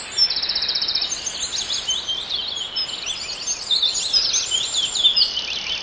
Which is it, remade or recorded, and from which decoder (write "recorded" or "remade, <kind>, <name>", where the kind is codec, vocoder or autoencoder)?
recorded